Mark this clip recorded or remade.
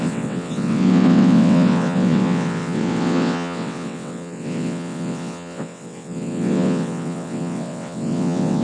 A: remade